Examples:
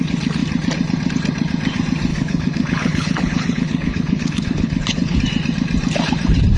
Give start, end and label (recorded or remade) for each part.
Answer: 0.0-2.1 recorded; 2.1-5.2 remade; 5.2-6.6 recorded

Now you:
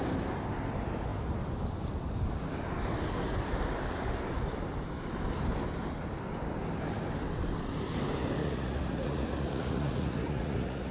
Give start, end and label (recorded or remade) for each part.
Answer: 0.0-8.4 recorded; 8.4-10.9 remade

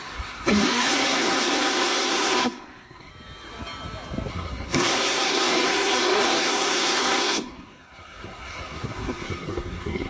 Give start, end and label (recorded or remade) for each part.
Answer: 0.0-3.1 remade; 3.1-4.3 recorded; 4.3-10.1 remade

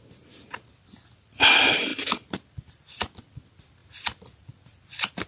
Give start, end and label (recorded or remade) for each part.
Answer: 0.0-5.3 recorded

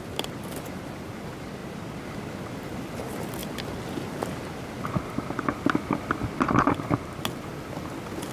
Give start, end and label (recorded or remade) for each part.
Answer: 0.0-8.3 recorded